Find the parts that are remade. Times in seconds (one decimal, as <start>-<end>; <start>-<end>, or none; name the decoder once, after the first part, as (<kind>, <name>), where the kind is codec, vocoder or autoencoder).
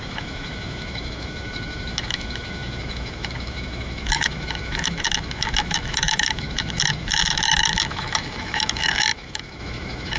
0.0-10.2 (autoencoder, DAC-VAE)